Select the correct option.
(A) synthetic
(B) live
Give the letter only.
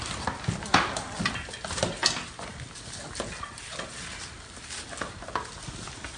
B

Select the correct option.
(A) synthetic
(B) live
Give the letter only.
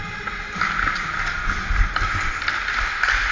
B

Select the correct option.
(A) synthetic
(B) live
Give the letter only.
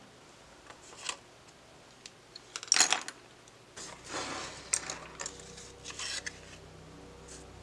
B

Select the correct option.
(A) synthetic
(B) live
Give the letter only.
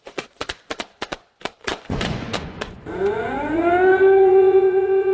A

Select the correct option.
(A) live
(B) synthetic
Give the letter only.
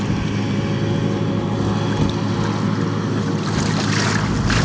A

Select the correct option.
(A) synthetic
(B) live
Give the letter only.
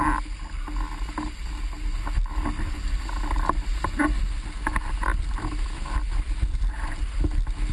B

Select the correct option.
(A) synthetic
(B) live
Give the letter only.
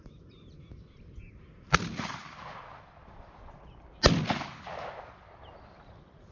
B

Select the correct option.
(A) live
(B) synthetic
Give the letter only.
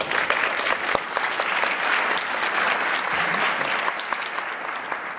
A